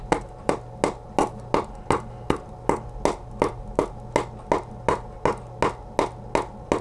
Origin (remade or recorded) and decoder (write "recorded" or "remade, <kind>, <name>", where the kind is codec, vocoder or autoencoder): recorded